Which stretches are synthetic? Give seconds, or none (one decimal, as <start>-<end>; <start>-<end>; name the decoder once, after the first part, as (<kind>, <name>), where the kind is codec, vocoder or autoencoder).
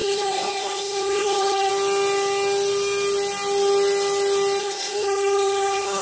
0.0-1.7 (codec, SNAC); 4.6-6.0